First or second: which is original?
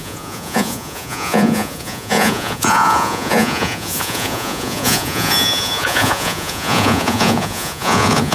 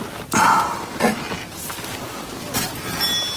second